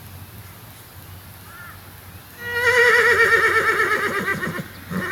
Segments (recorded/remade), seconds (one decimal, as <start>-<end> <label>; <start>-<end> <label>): 0.0-5.1 recorded